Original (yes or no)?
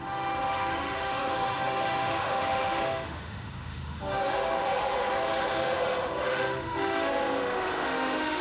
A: no